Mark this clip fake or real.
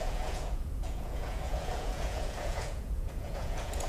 fake